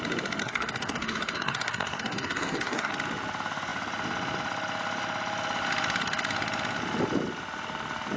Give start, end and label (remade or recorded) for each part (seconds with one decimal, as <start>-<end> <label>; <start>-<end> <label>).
0.0-0.4 recorded; 0.4-2.9 remade; 2.9-8.2 recorded